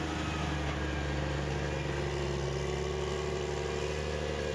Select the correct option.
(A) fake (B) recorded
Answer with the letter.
B